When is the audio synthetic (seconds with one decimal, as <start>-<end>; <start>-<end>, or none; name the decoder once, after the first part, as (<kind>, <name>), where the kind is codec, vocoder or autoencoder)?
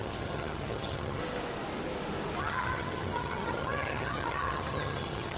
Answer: 0.0-1.2 (vocoder, HiFi-GAN); 2.4-5.4